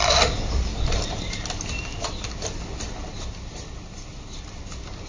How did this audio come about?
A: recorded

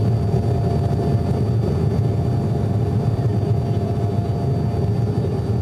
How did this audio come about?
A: recorded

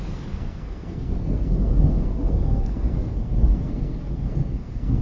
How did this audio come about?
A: remade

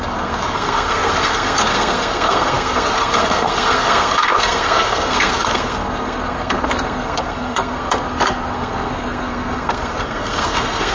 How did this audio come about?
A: remade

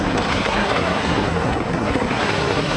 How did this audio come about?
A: remade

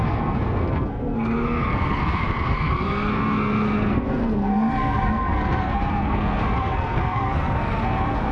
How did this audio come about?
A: remade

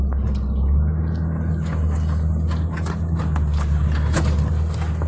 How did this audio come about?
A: recorded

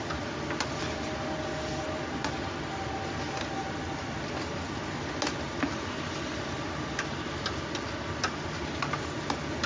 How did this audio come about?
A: recorded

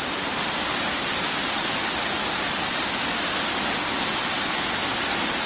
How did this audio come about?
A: recorded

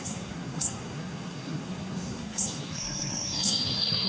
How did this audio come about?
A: remade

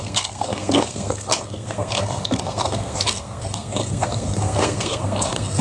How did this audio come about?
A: remade